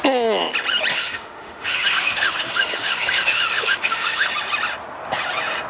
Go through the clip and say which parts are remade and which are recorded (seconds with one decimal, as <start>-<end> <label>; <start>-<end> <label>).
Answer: 0.0-0.9 recorded; 0.9-4.3 remade; 4.3-5.7 recorded